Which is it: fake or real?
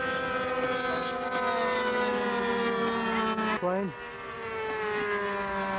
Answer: real